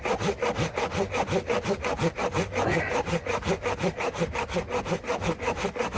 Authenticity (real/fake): real